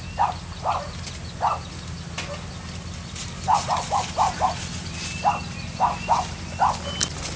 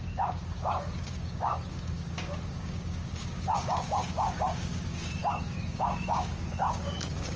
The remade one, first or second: second